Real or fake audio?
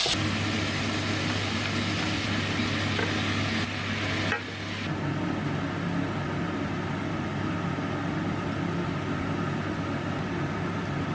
real